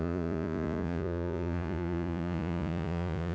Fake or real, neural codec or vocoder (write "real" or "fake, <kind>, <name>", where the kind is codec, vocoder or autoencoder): fake, vocoder, Vocos